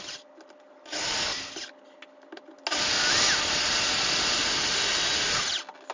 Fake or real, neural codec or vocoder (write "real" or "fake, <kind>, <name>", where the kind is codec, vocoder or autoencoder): real